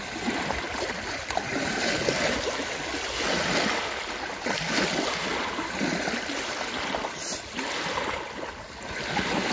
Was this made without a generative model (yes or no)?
yes